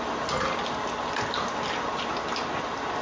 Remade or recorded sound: recorded